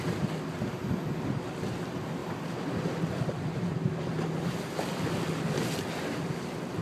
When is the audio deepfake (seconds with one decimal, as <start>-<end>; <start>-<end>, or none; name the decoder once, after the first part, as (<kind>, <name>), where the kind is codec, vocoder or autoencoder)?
2.2-3.7 (vocoder, BigVGAN v2)